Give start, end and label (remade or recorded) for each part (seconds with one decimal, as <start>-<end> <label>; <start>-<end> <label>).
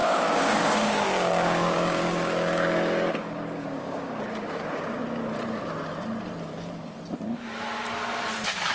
0.0-4.2 remade; 4.2-8.7 recorded